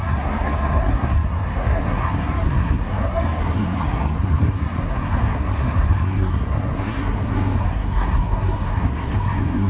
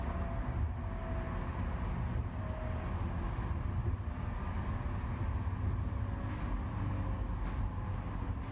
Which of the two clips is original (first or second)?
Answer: second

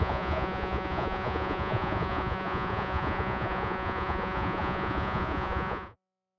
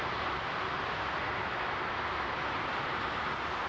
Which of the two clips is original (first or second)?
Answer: second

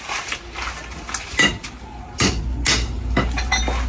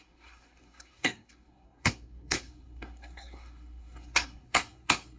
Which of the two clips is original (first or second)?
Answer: first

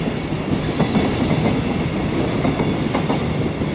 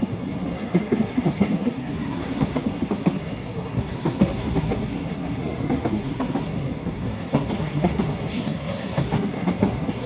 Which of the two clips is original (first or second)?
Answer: first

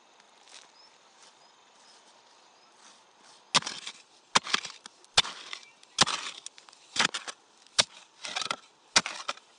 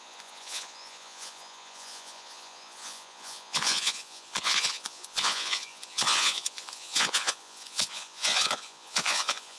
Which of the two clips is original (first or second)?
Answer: first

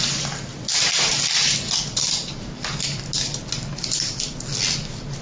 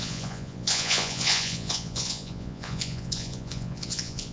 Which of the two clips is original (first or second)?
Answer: first